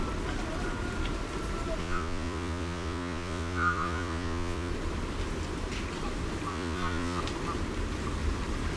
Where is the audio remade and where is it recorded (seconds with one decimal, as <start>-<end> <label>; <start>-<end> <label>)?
0.0-1.8 recorded; 1.8-4.7 remade; 4.7-6.5 recorded; 6.5-7.2 remade; 7.2-8.8 recorded